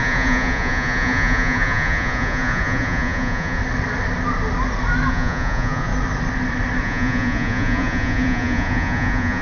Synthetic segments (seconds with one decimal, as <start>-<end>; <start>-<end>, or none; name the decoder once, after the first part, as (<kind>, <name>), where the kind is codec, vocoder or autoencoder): 0.0-3.6 (vocoder, Vocos); 5.1-5.9; 6.8-9.4